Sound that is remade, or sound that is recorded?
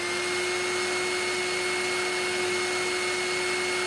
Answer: recorded